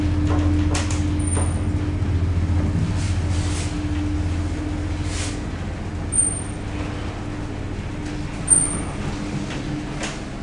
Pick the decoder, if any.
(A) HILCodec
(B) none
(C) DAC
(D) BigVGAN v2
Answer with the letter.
B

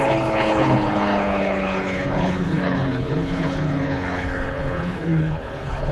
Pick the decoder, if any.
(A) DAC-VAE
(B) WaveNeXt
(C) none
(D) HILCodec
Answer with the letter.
D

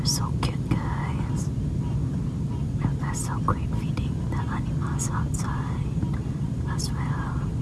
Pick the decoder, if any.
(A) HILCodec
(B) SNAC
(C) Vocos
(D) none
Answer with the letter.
D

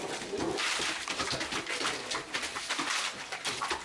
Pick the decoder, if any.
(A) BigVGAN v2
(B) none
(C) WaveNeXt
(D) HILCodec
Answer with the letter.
B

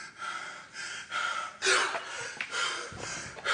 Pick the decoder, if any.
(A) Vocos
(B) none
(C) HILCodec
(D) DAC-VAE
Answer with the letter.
B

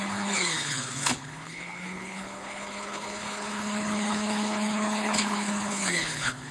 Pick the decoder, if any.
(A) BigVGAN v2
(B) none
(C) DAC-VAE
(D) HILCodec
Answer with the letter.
D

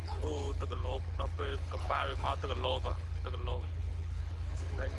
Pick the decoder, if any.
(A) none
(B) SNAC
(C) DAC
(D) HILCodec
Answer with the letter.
D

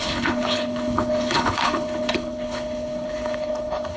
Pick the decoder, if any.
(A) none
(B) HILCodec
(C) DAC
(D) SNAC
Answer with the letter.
B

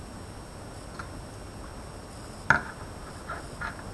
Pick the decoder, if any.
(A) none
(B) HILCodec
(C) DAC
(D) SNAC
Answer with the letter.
A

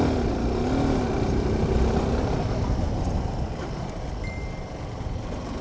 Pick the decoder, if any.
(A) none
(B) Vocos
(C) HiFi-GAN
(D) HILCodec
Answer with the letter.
A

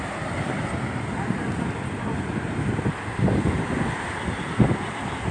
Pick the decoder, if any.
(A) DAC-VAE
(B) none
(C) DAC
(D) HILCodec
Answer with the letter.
B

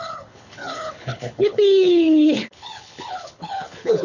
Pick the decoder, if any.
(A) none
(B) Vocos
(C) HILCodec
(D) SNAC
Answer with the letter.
C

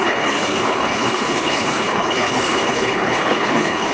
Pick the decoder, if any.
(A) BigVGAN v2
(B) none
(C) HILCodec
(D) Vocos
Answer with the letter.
C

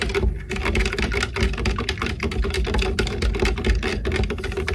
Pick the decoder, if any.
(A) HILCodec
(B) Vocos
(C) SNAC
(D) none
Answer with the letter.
D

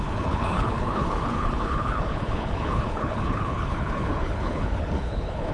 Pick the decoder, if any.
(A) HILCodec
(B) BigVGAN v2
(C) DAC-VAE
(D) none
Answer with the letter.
A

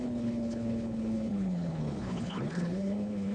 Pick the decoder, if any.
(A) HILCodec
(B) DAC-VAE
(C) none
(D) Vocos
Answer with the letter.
A